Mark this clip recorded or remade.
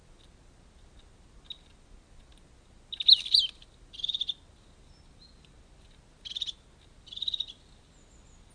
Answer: recorded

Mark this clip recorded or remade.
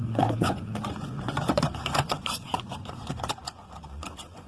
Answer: remade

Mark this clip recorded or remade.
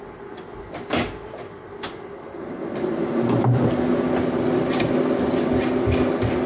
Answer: recorded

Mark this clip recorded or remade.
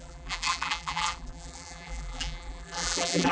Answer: remade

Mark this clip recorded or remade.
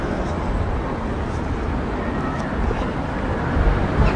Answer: recorded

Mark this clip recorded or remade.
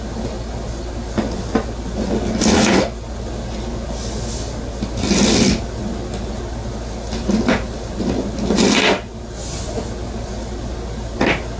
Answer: recorded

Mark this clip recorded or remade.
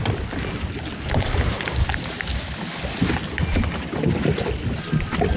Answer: recorded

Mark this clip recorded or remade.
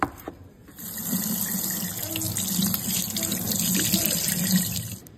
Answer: recorded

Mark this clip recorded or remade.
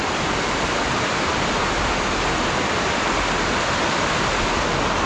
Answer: recorded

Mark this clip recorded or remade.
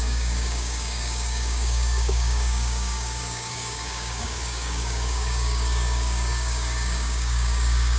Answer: remade